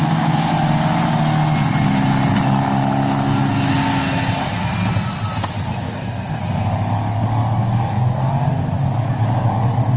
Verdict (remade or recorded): recorded